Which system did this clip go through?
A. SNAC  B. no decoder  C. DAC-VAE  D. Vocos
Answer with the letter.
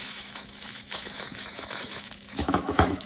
C